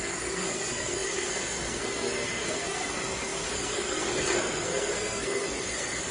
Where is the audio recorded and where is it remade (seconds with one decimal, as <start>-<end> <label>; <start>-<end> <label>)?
0.0-6.1 remade

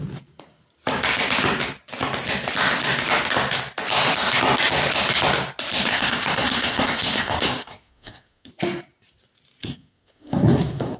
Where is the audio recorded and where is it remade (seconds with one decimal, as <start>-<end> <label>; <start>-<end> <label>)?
0.0-5.9 recorded; 5.9-8.5 remade; 8.5-9.6 recorded; 9.6-11.0 remade

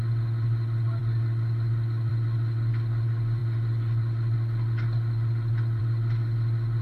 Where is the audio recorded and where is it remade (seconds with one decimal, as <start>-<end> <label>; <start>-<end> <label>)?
0.0-3.4 recorded; 3.4-5.8 remade; 5.8-6.8 recorded

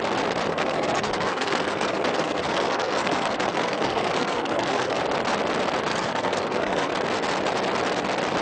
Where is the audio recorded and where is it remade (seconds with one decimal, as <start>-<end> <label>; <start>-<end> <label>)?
0.0-0.5 recorded; 0.5-5.0 remade; 5.0-5.9 recorded; 5.9-6.9 remade; 6.9-8.4 recorded